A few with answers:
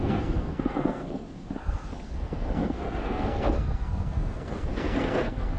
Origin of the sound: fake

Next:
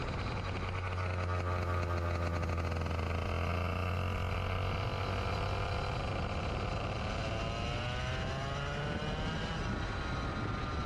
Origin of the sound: real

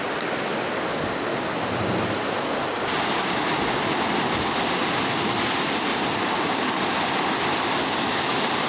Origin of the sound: real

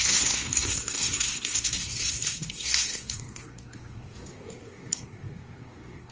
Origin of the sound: fake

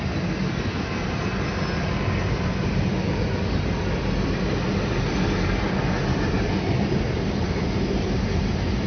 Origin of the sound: real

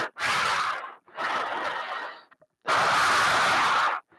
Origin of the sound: real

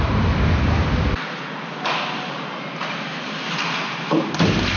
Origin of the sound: real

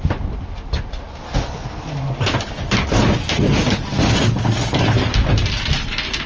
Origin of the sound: real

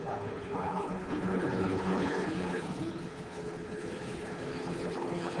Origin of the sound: fake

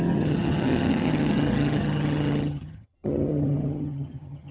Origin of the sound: fake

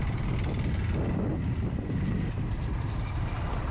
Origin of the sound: real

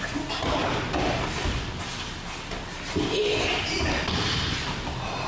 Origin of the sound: real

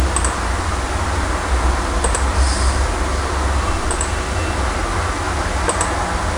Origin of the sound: real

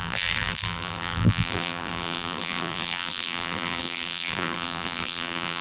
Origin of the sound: fake